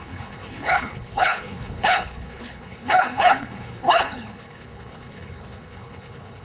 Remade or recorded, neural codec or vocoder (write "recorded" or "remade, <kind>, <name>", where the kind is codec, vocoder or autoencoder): remade, codec, HILCodec